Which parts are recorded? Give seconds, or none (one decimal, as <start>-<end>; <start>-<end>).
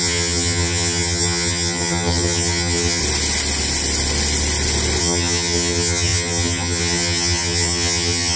3.0-5.0